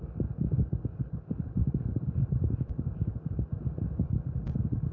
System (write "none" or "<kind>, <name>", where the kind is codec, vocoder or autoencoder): none